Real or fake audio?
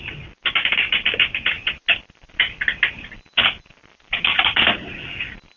real